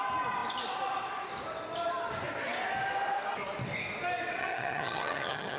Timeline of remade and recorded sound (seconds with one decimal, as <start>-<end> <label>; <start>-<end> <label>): 0.0-4.4 recorded; 4.4-5.6 remade